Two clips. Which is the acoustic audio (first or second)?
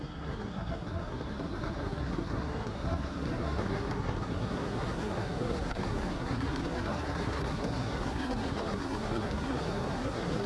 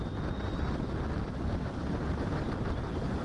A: second